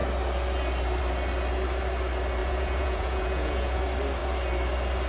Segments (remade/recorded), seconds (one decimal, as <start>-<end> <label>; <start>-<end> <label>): 0.0-2.4 recorded; 2.4-3.8 remade; 3.8-5.1 recorded